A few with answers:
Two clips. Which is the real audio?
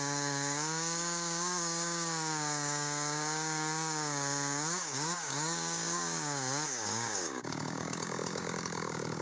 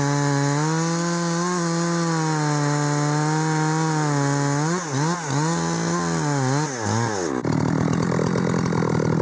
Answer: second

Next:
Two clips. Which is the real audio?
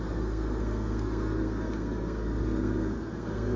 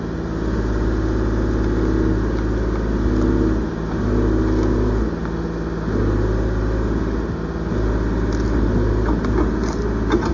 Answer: second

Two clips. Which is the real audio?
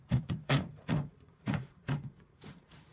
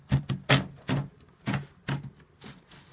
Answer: second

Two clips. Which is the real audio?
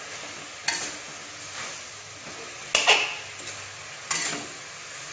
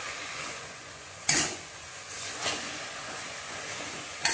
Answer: first